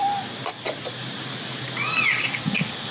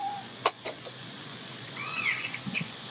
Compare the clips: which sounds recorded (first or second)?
first